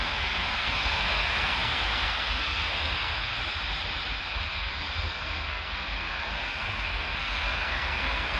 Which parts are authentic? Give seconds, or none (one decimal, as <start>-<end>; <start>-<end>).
3.3-4.2